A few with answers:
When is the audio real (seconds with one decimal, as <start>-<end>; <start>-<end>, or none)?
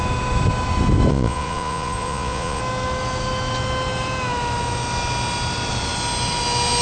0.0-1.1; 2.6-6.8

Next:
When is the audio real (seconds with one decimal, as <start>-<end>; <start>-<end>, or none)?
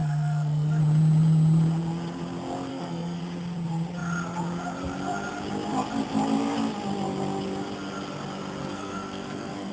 0.8-2.7; 3.2-8.6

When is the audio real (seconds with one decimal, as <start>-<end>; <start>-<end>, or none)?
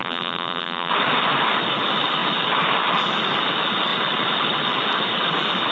0.9-5.7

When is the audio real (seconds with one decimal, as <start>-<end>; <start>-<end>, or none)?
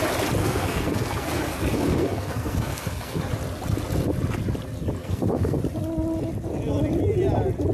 0.0-0.4; 3.2-5.0; 5.6-7.7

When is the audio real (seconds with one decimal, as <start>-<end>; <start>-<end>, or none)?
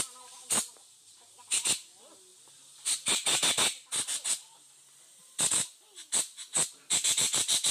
0.0-7.7